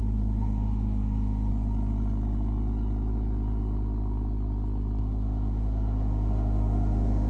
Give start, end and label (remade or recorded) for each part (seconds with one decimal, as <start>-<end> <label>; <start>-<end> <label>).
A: 0.0-1.5 remade; 1.5-5.0 recorded; 5.0-7.3 remade